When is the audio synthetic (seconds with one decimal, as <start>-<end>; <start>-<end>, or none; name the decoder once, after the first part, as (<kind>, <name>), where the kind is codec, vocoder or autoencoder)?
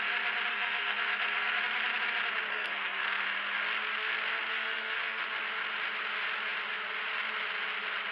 0.5-1.6 (codec, SNAC); 2.5-3.2; 4.5-5.2